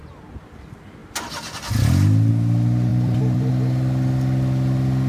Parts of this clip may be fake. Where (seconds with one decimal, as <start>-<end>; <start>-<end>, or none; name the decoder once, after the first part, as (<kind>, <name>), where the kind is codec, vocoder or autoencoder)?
2.9-3.5 (vocoder, BigVGAN v2)